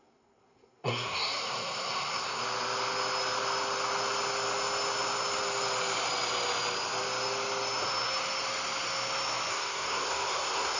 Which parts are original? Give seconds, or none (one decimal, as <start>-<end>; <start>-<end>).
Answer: 2.4-9.5